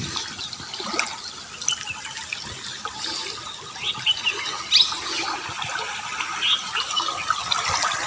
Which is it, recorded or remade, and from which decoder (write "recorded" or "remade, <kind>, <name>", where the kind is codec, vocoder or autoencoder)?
recorded